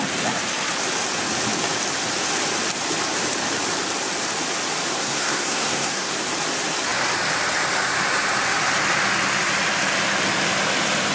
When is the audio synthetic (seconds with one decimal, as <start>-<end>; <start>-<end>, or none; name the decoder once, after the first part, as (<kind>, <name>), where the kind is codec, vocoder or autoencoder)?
5.0-6.1 (codec, SNAC)